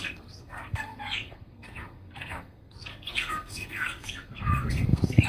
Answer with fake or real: fake